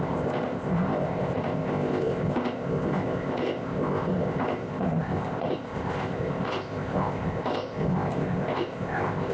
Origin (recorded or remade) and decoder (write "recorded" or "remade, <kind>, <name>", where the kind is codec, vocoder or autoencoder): remade, codec, ZipCodec